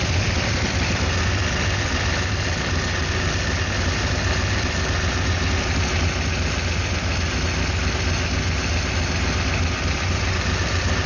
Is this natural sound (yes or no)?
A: yes